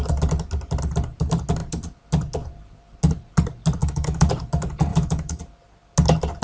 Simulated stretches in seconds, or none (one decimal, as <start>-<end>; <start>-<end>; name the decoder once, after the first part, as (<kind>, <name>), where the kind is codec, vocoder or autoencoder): 3.8-4.3 (autoencoder, DAC-VAE); 4.9-5.4